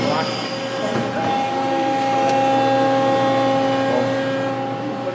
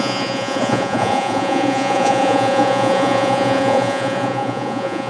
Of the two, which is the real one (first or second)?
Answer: first